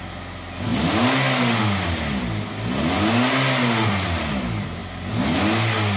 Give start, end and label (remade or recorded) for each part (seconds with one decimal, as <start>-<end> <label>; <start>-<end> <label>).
0.0-6.0 recorded